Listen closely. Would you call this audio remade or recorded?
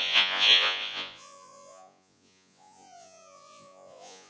remade